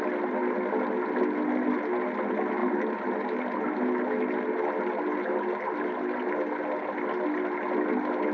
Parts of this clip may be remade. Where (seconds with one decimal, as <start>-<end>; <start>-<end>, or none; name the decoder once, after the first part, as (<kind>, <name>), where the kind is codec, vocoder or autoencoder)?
none